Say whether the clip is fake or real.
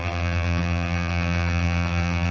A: fake